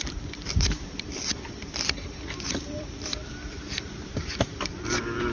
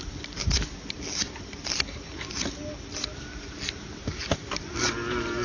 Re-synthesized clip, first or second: first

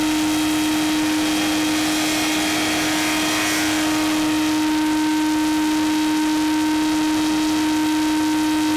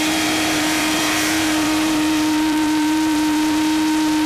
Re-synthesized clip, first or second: second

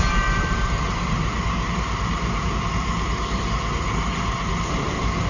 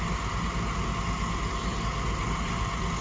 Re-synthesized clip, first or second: first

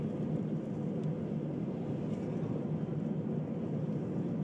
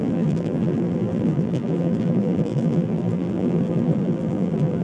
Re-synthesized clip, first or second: second